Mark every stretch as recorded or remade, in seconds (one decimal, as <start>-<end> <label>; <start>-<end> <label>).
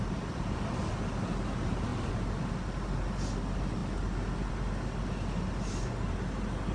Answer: 0.0-6.7 recorded